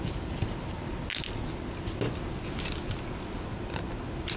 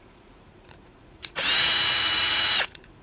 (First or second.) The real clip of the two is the first